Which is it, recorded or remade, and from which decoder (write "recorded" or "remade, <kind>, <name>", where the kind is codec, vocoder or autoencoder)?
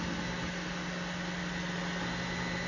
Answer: recorded